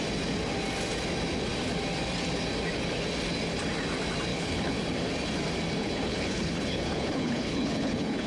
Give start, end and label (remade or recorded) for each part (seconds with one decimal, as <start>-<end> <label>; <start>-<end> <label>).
0.0-4.3 recorded; 4.3-4.8 remade; 4.8-5.8 recorded; 5.8-8.3 remade